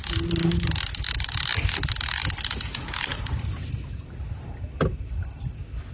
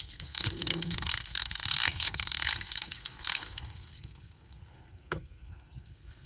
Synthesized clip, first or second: second